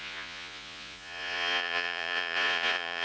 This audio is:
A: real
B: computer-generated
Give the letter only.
B